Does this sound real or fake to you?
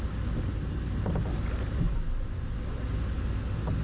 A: real